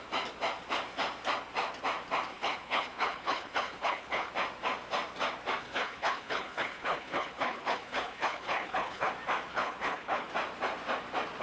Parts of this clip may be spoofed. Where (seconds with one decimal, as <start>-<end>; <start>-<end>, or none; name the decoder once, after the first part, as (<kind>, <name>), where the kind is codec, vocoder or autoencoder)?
2.3-4.3 (codec, HILCodec); 5.6-9.1; 9.5-10.3